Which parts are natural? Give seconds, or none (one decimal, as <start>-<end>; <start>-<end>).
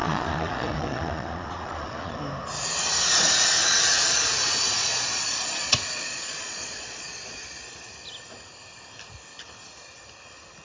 2.2-4.8; 7.9-10.6